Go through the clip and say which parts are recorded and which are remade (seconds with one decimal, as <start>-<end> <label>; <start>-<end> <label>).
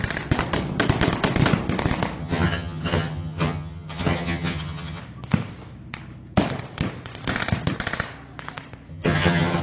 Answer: 0.0-2.2 recorded; 2.2-5.0 remade; 5.0-8.9 recorded; 8.9-9.6 remade